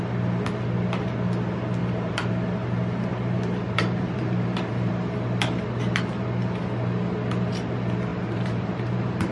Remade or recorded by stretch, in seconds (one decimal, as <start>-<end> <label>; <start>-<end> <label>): 0.0-1.8 recorded; 1.8-2.3 remade; 2.3-3.1 recorded; 3.1-4.9 remade; 4.9-8.1 recorded; 8.1-9.3 remade